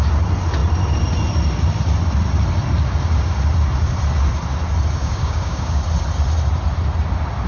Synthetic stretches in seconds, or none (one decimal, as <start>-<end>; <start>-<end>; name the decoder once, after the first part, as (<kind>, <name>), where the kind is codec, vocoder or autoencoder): 5.0-5.8 (codec, DAC)